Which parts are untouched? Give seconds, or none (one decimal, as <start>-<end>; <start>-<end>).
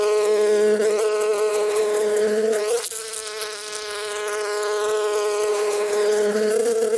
0.0-1.5; 2.6-5.5; 6.5-7.0